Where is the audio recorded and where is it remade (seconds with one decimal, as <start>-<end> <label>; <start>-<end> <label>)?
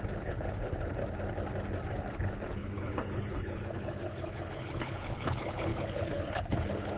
0.0-1.0 remade; 1.0-2.0 recorded; 2.0-7.0 remade